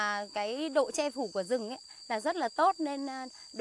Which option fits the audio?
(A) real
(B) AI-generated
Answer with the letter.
A